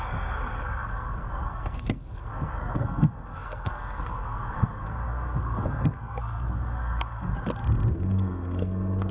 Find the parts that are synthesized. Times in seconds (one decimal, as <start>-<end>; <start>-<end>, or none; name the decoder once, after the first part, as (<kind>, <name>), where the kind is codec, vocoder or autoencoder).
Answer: 0.0-7.3 (codec, SNAC); 7.9-9.1